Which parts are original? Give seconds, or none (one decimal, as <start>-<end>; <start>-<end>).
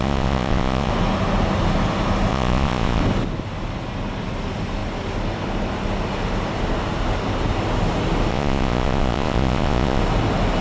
0.9-2.3; 3.0-8.3; 10.0-10.6